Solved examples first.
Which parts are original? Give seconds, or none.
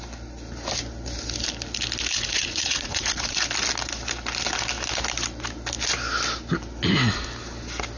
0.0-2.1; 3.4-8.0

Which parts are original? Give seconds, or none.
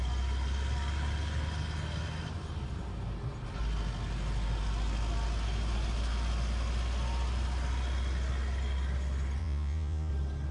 0.0-9.4; 10.1-10.5